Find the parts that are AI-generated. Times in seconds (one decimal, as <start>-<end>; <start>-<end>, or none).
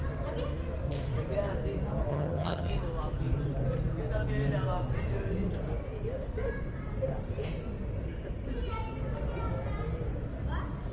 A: 2.1-2.7